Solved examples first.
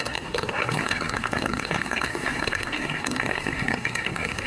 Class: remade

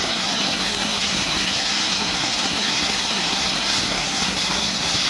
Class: remade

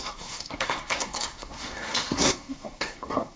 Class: remade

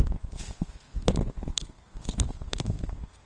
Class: remade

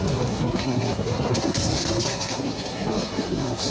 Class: remade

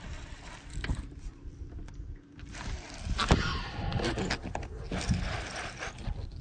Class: recorded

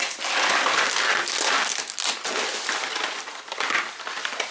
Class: recorded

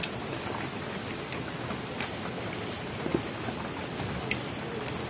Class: recorded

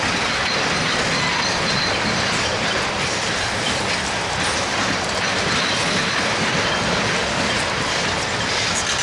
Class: recorded